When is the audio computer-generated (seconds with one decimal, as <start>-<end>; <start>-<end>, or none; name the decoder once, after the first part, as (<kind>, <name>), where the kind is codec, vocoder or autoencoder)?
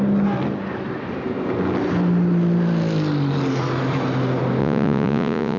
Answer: 4.6-5.6 (vocoder, Vocos)